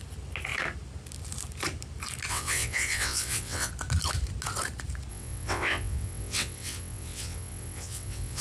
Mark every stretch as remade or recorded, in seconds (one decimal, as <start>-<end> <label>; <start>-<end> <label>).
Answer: 0.0-2.3 recorded; 2.3-3.7 remade; 3.7-5.1 recorded; 5.1-8.4 remade